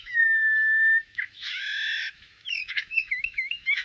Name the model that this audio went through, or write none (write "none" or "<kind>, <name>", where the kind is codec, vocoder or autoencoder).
autoencoder, DAC-VAE